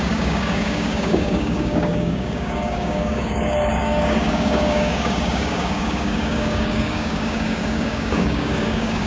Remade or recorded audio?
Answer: remade